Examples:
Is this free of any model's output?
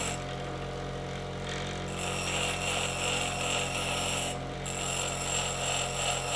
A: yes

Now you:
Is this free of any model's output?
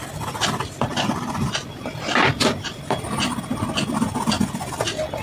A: yes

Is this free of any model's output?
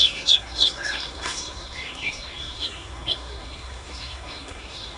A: no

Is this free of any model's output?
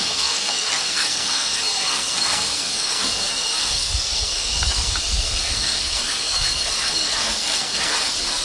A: no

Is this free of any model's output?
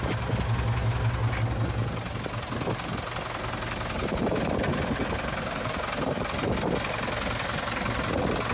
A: yes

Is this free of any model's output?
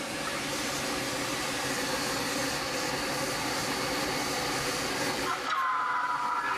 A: yes